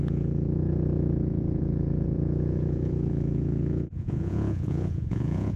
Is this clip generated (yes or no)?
yes